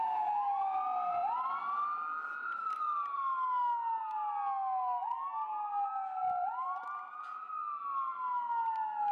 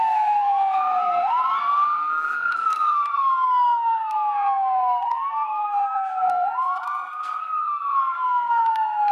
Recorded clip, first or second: first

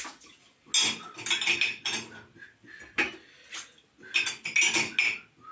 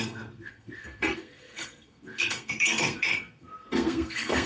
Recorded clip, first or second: first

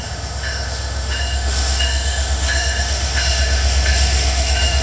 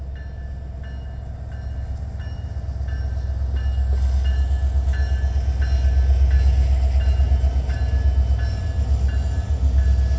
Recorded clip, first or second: second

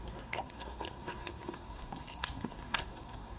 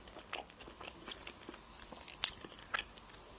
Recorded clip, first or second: second